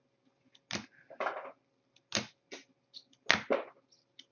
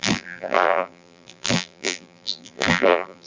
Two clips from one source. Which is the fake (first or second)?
second